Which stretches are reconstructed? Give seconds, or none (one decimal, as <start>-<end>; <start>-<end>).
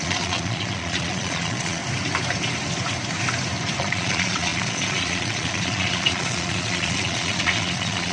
0.0-1.8; 3.8-8.1